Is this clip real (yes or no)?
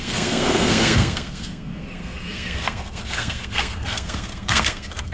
no